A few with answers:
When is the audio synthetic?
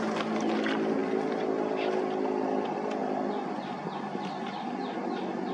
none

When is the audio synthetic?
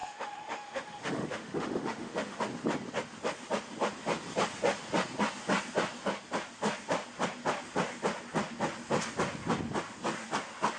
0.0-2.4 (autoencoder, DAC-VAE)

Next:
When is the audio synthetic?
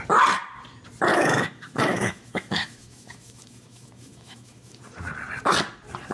1.1-4.8 (autoencoder, DAC-VAE)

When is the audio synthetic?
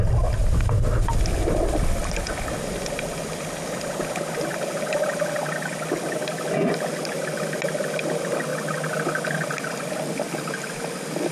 none